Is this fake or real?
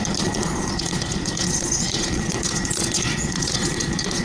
fake